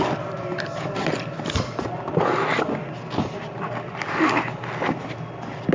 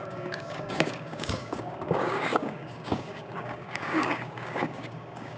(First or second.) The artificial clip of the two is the second